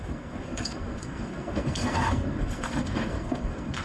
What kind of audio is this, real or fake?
fake